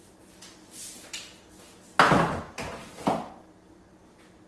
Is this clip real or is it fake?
real